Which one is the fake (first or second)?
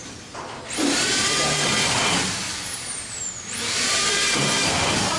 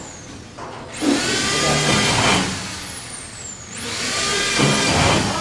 first